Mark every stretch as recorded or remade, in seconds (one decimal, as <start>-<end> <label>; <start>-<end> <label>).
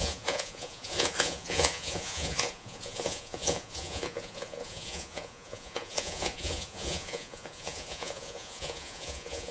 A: 0.0-9.5 remade